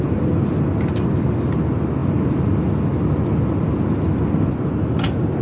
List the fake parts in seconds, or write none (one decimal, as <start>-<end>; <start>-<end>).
none

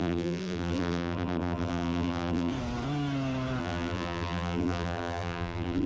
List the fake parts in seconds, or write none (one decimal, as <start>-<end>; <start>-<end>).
0.0-2.5; 3.6-5.9

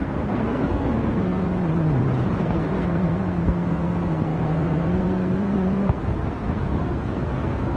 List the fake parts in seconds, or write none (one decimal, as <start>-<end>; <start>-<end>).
0.0-1.5; 2.4-7.8

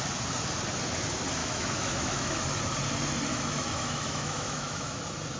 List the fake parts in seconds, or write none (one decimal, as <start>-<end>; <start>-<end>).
1.4-2.4; 3.3-5.0

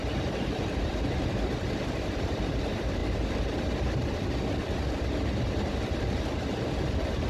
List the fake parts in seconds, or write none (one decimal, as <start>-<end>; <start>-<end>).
0.0-3.0

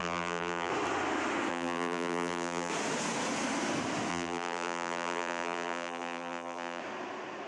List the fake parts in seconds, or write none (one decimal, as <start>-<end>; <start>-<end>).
0.0-0.7; 1.5-2.7; 4.1-6.8